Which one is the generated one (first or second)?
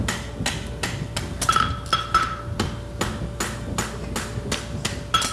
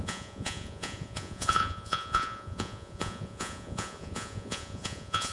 second